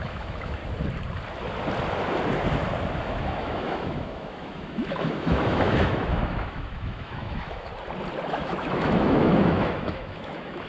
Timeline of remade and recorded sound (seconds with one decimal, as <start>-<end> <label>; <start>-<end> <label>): 0.0-0.6 remade; 0.6-3.0 recorded; 3.0-7.7 remade; 7.7-8.2 recorded; 8.2-10.7 remade